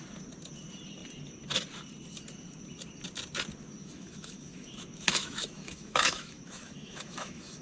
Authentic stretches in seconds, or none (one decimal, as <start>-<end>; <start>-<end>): 0.0-3.8